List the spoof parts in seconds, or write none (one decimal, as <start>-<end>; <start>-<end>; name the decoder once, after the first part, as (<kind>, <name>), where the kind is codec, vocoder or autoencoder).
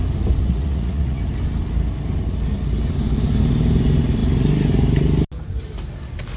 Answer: 0.4-1.2 (vocoder, Vocos)